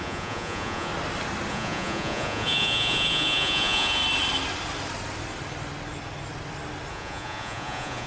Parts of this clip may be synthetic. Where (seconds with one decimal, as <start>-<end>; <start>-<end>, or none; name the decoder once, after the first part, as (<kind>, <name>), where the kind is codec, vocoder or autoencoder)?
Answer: 0.0-0.9 (vocoder, Vocos); 1.5-4.0; 6.9-8.1